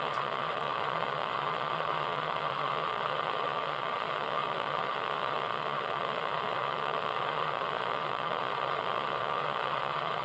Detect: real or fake fake